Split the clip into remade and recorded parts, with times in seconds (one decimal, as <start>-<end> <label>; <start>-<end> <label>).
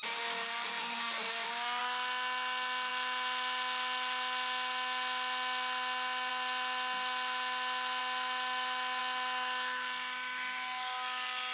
0.0-11.5 recorded